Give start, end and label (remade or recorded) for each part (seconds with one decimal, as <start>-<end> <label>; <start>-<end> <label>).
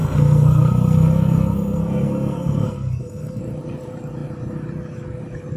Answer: 0.0-3.4 remade; 3.4-5.6 recorded